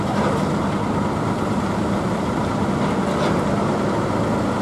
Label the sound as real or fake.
real